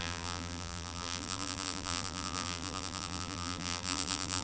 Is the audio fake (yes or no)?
yes